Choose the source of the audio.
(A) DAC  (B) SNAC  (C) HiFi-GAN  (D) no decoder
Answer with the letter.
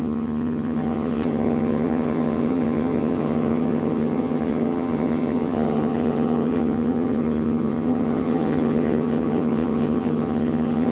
C